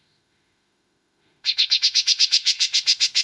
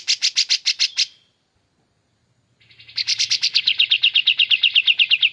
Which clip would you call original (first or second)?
second